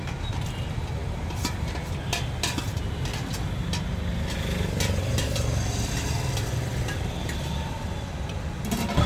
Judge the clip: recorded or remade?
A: recorded